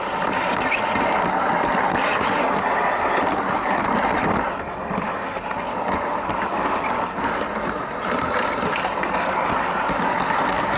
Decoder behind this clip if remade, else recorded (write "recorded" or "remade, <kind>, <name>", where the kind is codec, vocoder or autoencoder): recorded